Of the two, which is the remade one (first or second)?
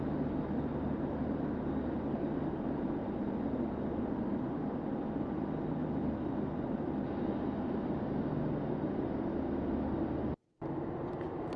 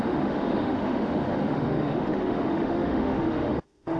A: second